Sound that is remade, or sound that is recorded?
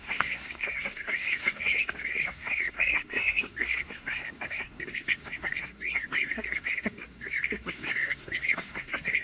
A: remade